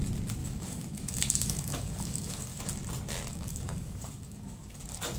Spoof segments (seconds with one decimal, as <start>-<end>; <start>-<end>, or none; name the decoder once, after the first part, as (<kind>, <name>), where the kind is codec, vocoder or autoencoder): 0.4-2.6 (codec, DAC); 3.3-4.8